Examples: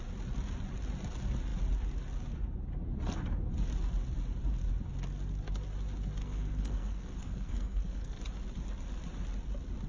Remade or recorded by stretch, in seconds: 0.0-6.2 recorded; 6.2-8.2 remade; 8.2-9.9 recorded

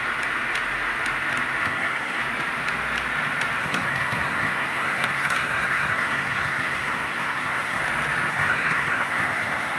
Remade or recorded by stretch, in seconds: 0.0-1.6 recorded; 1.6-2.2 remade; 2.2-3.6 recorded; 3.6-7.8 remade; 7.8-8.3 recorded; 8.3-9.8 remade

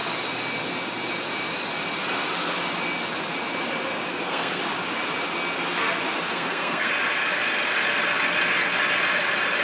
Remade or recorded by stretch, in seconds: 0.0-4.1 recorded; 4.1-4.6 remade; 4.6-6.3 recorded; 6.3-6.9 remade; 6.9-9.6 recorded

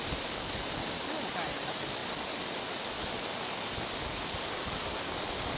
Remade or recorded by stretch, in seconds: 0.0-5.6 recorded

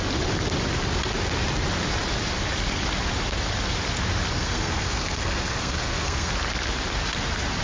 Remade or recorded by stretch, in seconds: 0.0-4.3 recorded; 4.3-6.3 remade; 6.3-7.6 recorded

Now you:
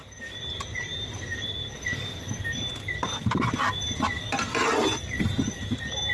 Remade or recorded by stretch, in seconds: 0.0-6.1 recorded